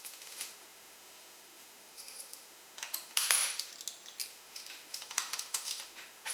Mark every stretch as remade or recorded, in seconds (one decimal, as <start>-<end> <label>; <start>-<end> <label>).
0.0-3.7 remade; 3.7-4.3 recorded; 4.3-6.3 remade